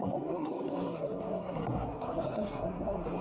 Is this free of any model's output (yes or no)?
no